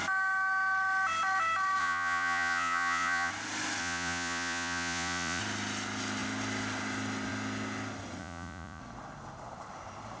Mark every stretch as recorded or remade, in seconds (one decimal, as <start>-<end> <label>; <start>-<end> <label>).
0.0-1.8 recorded; 1.8-3.3 remade; 3.3-3.8 recorded; 3.8-5.4 remade; 5.4-8.2 recorded; 8.2-8.8 remade; 8.8-10.2 recorded